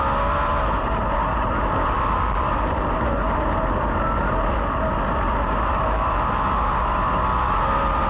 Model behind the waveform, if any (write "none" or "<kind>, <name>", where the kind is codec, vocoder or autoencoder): none